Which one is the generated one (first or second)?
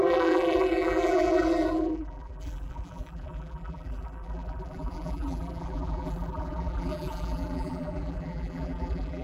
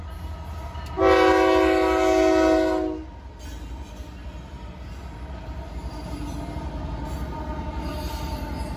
first